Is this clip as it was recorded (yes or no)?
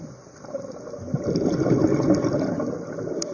yes